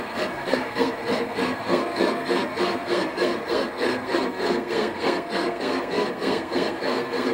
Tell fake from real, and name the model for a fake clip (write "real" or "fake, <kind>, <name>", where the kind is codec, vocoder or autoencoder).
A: fake, codec, SNAC